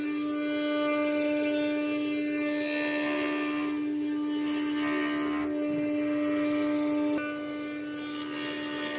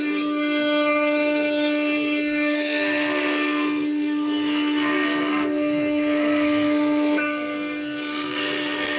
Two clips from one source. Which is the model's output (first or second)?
second